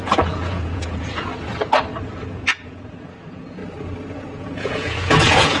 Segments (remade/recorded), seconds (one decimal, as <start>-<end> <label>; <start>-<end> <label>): 0.0-1.3 remade; 1.3-2.1 recorded; 2.1-3.6 remade; 3.6-4.2 recorded; 4.2-5.6 remade